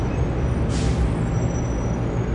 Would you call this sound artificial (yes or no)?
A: no